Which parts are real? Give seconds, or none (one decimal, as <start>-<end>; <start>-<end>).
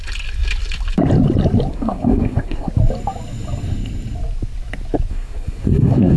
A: 0.0-1.7; 2.7-5.1